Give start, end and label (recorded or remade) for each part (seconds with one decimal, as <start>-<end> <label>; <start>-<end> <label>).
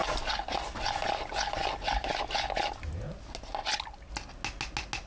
0.0-5.1 recorded